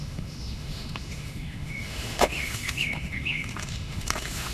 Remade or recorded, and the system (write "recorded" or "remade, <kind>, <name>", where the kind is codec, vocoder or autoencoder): remade, autoencoder, DAC-VAE